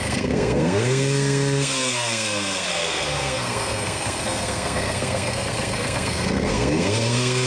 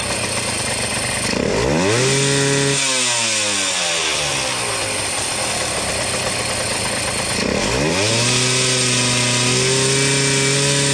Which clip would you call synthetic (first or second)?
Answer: first